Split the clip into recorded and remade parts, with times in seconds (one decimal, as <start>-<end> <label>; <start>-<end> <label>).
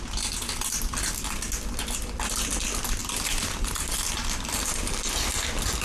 0.0-3.0 recorded; 3.0-4.0 remade; 4.0-5.8 recorded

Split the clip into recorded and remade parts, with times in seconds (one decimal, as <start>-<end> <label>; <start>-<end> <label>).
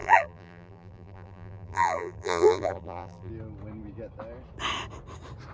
0.0-3.3 remade; 3.3-5.5 recorded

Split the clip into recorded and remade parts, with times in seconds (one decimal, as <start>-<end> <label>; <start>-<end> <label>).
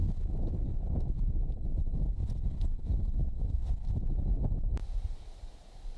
0.0-6.0 recorded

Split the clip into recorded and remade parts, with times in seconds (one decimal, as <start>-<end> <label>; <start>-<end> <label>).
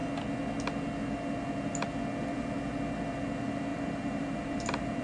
0.0-3.7 recorded; 3.7-5.0 remade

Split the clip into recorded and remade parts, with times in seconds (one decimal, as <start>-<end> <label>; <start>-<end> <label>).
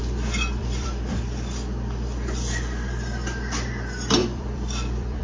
0.0-0.6 recorded; 0.6-1.2 remade; 1.2-4.2 recorded; 4.2-5.2 remade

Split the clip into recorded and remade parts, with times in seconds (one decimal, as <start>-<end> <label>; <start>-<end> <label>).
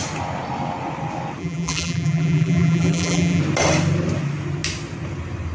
0.0-1.4 recorded; 1.4-3.4 remade; 3.4-5.5 recorded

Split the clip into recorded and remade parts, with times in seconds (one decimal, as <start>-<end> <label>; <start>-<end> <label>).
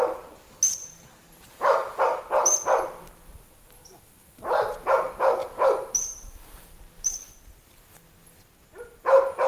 0.0-0.8 recorded; 0.8-2.0 remade; 2.0-9.5 recorded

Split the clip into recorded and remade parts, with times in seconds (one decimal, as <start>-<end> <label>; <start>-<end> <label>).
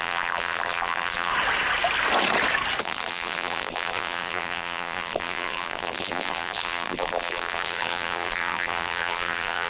0.0-1.3 remade; 1.3-2.8 recorded; 2.8-9.7 remade